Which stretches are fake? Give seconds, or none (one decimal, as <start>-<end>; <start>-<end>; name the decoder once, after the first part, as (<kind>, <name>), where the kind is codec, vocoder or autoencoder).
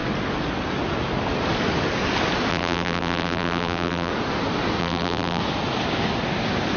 2.5-4.1 (vocoder, BigVGAN v2); 4.8-5.4